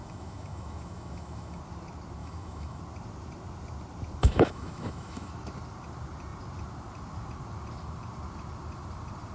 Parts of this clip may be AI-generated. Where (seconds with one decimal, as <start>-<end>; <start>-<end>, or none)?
0.0-1.6; 2.2-2.8; 4.2-5.3